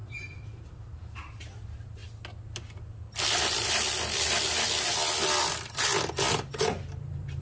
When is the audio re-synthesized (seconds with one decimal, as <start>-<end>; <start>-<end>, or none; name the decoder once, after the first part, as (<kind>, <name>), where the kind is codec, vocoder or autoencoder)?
0.0-2.0 (vocoder, BigVGAN v2); 6.3-7.4